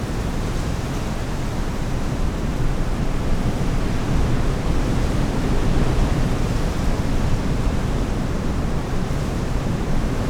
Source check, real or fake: fake